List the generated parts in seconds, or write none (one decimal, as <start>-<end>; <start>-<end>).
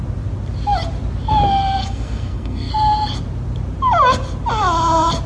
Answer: 1.8-2.7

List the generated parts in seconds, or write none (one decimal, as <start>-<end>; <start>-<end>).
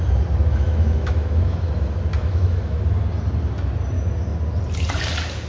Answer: 0.5-1.7; 2.2-2.8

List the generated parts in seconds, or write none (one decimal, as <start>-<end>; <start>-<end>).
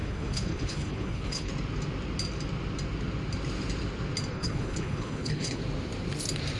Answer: 0.0-1.5; 4.3-5.6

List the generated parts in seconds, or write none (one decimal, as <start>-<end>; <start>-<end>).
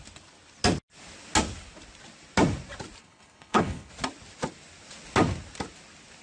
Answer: 3.0-3.9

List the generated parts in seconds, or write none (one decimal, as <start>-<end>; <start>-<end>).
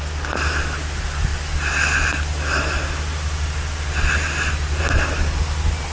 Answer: none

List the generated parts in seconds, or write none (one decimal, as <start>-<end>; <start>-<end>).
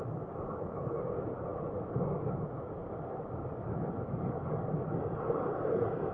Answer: none